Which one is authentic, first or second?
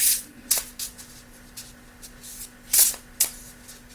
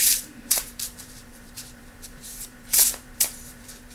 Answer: first